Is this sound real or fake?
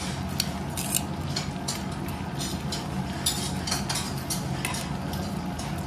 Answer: real